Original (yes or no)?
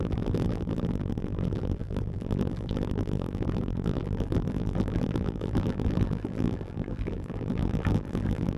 no